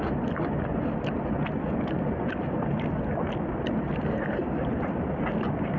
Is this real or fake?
real